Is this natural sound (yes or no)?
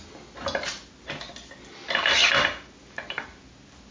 yes